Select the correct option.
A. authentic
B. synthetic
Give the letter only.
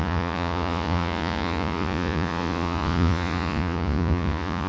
B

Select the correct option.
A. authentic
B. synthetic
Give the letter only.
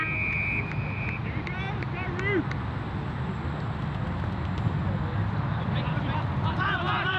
A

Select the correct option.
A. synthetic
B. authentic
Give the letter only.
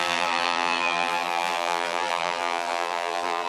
A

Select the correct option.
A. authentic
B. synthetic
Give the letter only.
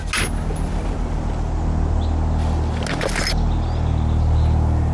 A